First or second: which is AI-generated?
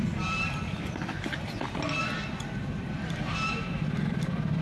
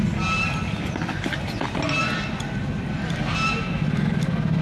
first